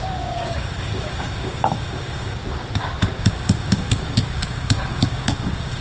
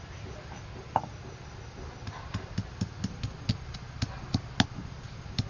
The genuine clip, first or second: second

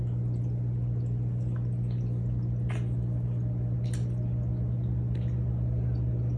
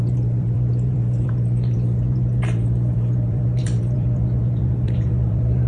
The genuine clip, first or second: first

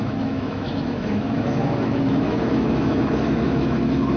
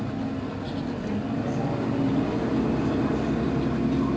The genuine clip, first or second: second